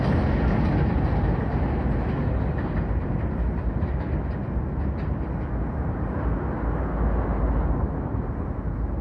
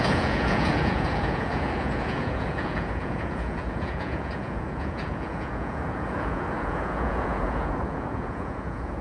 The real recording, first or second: first